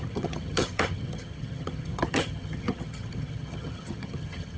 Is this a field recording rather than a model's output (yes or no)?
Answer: no